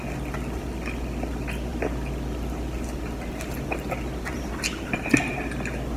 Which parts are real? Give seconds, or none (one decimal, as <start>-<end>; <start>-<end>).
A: 0.0-6.0